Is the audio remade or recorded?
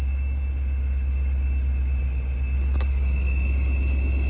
recorded